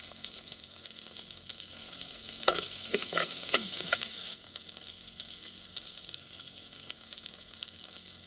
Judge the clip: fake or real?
fake